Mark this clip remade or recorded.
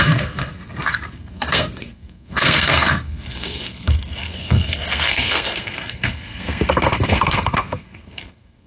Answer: remade